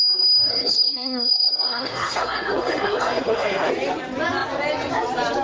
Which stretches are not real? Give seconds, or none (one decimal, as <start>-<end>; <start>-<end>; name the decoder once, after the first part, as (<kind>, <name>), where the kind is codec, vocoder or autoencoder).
0.5-3.7 (codec, SNAC)